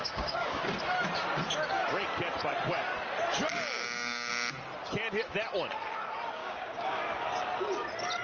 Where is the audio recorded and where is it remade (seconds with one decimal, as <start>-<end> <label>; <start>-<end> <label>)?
0.0-0.6 remade; 0.6-3.5 recorded; 3.5-4.3 remade; 4.3-6.4 recorded; 6.4-7.0 remade; 7.0-8.2 recorded